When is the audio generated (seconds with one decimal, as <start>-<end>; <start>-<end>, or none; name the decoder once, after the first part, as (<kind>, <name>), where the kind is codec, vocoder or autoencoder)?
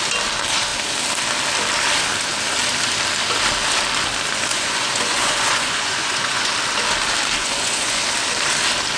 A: 4.5-6.5 (vocoder, Vocos); 7.4-8.0